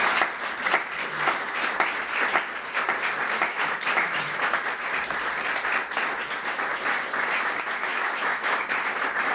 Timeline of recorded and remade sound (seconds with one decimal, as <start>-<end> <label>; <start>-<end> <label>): 0.0-3.5 recorded; 3.5-4.6 remade; 4.6-7.9 recorded; 7.9-8.6 remade; 8.6-9.3 recorded